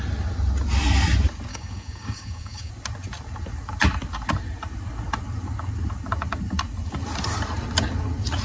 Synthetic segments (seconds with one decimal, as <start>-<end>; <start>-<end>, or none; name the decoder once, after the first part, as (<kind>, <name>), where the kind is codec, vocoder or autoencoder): 1.5-2.7 (codec, DAC)